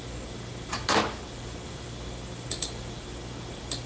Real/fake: real